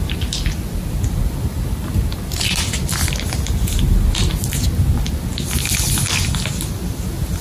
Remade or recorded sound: recorded